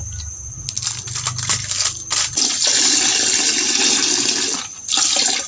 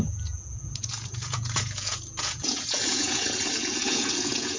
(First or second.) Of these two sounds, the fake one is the second